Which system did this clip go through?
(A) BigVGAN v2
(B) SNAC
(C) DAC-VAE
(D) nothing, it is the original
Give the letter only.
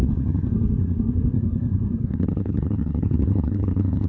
B